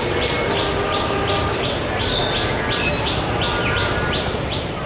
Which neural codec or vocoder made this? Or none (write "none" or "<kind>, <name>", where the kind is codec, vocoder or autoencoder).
none